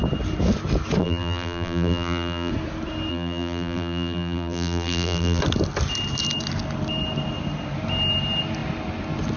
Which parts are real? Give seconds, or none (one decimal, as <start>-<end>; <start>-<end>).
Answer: 0.0-1.0; 2.5-3.1; 5.4-9.4